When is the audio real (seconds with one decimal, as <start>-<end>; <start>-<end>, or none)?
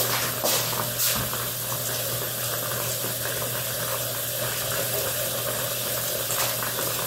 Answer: 0.0-5.8; 6.4-7.1